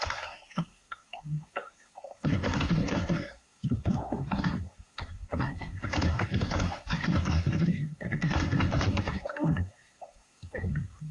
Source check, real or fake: fake